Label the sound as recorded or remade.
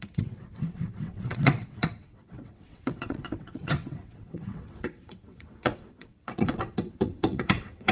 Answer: remade